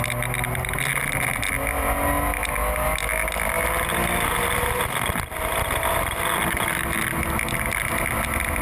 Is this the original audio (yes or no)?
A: yes